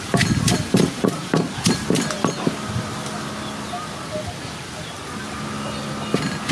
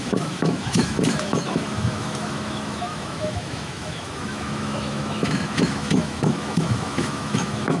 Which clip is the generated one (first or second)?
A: second